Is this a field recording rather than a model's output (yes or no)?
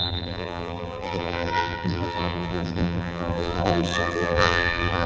no